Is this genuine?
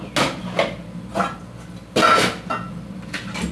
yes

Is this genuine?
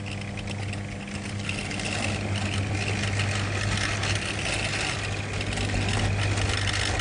yes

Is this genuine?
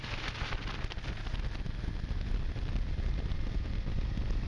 yes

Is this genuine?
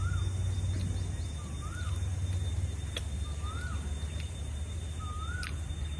yes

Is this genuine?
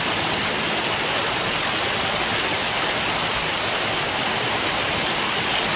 yes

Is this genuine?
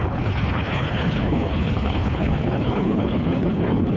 no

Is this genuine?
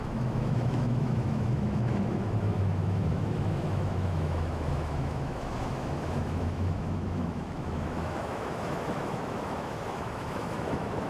no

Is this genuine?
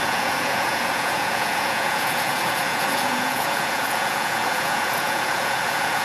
no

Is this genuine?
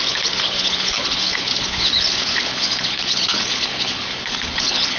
no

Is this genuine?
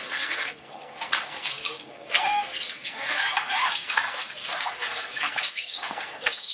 no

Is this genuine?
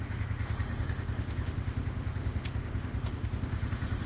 no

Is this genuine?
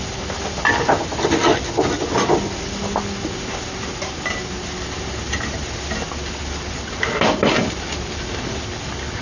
yes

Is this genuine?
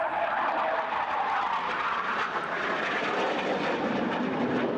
yes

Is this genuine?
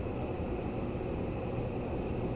yes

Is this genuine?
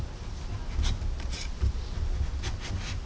yes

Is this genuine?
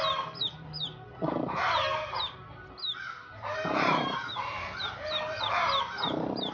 no